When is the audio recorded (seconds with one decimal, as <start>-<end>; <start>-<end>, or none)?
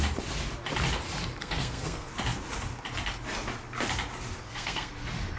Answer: 0.0-1.4; 2.1-4.4; 4.9-5.4